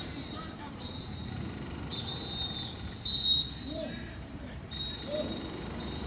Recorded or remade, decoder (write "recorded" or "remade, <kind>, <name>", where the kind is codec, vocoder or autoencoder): remade, vocoder, BigVGAN v2